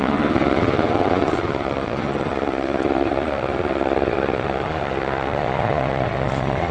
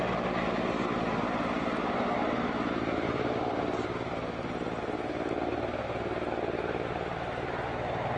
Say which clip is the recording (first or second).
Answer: second